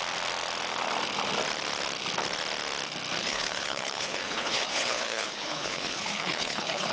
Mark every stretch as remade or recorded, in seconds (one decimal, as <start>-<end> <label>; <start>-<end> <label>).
0.0-3.2 recorded; 3.2-6.9 remade